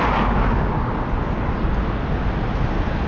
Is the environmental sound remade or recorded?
recorded